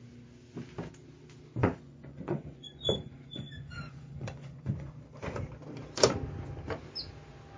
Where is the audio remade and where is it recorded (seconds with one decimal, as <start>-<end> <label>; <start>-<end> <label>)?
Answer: 0.0-1.6 recorded; 1.6-4.9 remade; 4.9-7.6 recorded

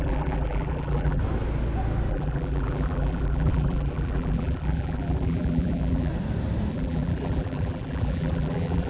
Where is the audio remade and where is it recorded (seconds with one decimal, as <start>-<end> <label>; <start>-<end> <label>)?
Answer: 0.0-1.2 remade; 1.2-2.1 recorded; 2.1-6.1 remade; 6.1-6.7 recorded; 6.7-8.9 remade

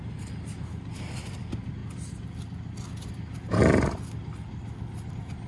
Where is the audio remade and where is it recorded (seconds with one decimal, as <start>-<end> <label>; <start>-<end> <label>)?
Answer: 0.0-1.8 remade; 1.8-5.1 recorded; 5.1-5.5 remade